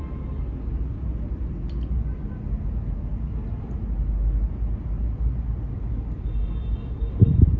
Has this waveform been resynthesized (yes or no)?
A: no